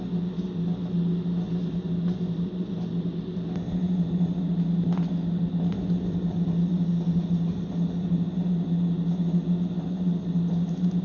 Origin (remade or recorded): recorded